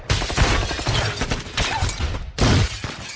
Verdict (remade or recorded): recorded